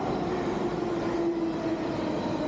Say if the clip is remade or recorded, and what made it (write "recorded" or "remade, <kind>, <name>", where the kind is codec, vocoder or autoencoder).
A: recorded